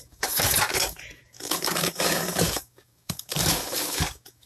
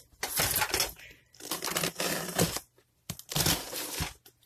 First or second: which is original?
second